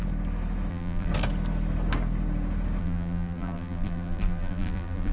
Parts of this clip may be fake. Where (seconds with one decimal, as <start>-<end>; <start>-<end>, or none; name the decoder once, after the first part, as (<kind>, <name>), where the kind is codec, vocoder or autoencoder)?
0.7-1.1 (vocoder, BigVGAN v2); 2.8-5.1